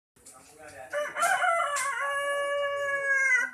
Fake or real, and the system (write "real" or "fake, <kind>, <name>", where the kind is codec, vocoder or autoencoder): real